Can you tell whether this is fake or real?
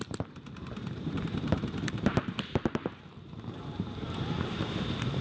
fake